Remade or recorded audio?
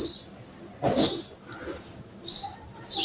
recorded